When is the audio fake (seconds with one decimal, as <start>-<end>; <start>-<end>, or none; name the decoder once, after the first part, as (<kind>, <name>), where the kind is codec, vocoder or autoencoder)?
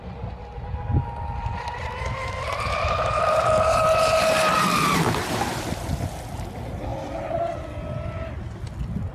none